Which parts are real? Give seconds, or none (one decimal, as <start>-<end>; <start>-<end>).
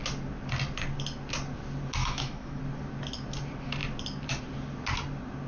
0.0-2.0; 2.6-5.5